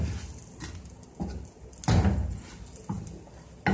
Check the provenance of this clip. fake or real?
real